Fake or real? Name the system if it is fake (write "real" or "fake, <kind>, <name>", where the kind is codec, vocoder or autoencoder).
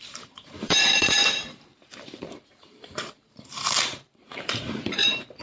fake, vocoder, BigVGAN v2